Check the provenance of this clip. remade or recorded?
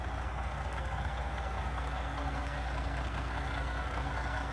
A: remade